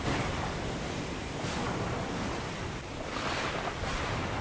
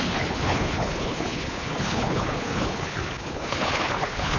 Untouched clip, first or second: first